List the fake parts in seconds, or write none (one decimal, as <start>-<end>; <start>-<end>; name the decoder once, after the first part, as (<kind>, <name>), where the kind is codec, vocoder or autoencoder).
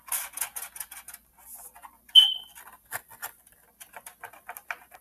none